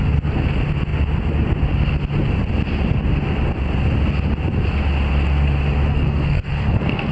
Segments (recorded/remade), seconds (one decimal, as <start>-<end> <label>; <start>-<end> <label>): 0.0-5.9 recorded; 5.9-7.1 remade

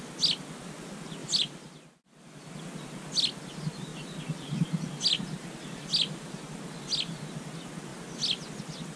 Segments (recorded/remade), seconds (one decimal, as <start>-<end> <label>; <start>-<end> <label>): 0.0-1.2 recorded; 1.2-2.5 remade; 2.5-9.0 recorded

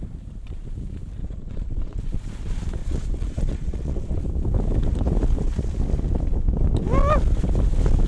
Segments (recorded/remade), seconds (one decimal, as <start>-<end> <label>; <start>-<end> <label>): 0.0-1.2 recorded; 1.2-2.0 remade; 2.0-2.8 recorded; 2.8-4.2 remade; 4.2-8.1 recorded